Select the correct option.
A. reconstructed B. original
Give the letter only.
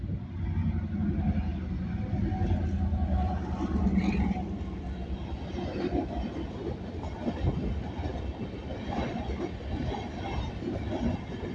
B